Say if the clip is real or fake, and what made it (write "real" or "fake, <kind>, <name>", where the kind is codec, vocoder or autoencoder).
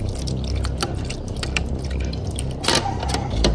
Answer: real